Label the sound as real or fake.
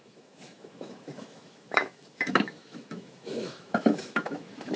fake